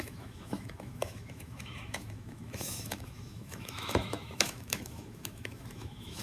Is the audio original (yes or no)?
no